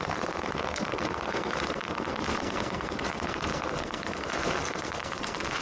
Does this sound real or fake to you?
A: fake